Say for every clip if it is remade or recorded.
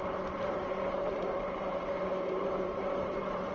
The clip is remade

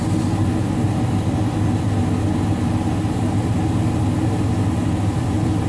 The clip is recorded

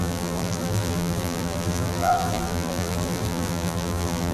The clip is remade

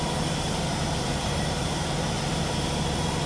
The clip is remade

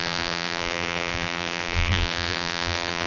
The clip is remade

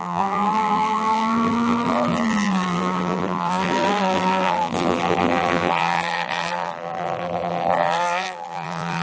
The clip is remade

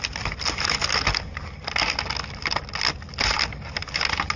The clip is recorded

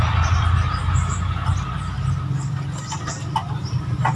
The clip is recorded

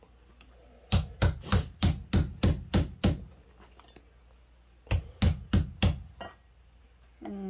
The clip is recorded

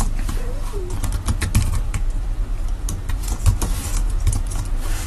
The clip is recorded